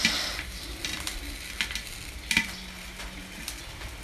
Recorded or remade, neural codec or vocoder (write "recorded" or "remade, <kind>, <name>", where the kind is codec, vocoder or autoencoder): recorded